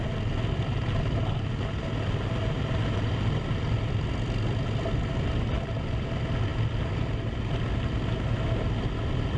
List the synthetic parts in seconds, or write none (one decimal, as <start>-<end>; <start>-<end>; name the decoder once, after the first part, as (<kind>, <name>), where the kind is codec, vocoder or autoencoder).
none